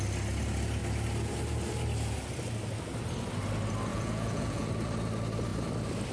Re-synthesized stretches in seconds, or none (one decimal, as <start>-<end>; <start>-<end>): 3.9-4.7